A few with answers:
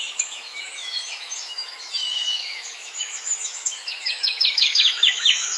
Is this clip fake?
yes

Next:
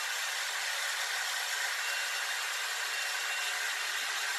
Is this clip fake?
no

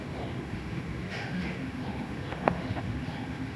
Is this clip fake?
yes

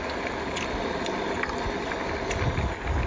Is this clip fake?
no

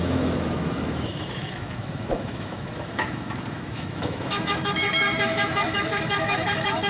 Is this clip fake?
yes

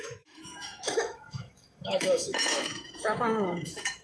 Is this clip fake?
yes